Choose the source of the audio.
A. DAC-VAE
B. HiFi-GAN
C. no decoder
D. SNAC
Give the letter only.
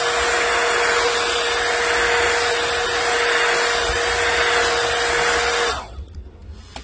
C